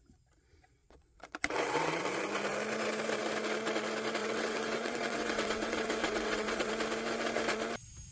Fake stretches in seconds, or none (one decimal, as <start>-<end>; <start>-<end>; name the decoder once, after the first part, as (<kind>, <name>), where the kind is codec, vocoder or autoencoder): 0.8-2.0 (vocoder, WaveNeXt); 4.2-6.7

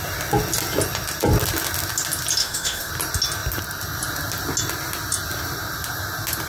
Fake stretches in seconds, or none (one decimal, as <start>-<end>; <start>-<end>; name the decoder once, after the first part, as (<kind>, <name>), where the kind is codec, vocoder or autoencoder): 2.4-2.9 (autoencoder, DAC-VAE)

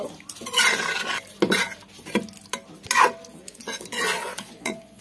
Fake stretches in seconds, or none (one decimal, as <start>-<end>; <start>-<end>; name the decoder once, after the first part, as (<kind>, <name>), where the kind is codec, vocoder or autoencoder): 3.3-5.0 (vocoder, Vocos)